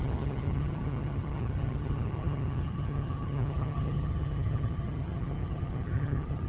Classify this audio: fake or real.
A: fake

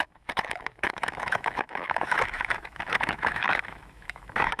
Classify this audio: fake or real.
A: fake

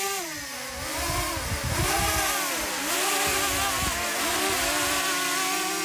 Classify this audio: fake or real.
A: real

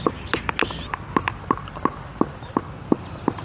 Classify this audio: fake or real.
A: real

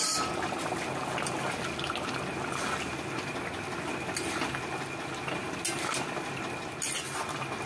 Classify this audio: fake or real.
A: real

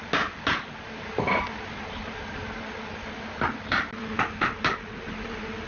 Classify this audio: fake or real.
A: real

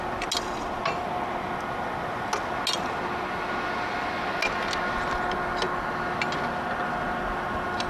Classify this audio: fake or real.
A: real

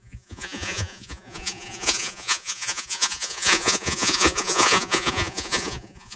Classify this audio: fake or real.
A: fake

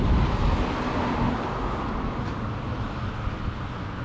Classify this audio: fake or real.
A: real